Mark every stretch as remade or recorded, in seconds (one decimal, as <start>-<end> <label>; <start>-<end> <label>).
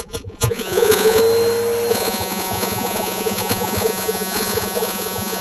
0.0-1.2 remade; 1.2-1.9 recorded; 1.9-5.4 remade